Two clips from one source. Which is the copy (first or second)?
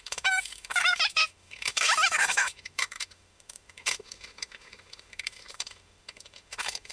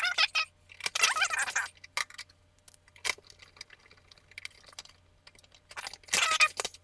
first